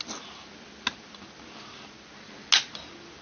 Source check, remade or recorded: recorded